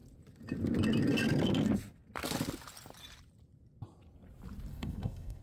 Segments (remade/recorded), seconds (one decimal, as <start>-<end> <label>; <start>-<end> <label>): 0.0-4.7 recorded; 4.7-5.4 remade